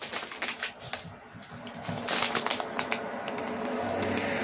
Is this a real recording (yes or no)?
yes